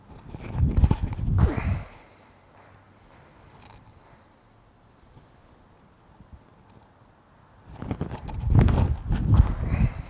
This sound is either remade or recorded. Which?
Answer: recorded